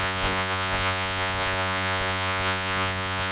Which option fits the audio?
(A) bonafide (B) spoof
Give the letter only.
B